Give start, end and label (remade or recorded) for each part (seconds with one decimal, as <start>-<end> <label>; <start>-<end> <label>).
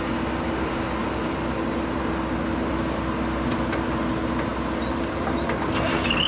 0.0-6.3 recorded